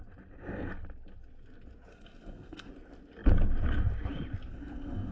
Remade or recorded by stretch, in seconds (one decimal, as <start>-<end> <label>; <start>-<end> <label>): 0.0-1.9 recorded; 1.9-2.7 remade; 2.7-4.5 recorded; 4.5-5.1 remade